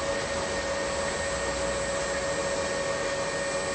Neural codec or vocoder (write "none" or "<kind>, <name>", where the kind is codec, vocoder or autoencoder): none